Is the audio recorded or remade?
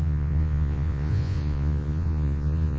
remade